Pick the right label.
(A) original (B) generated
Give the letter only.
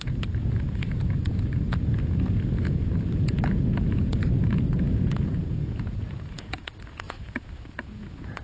B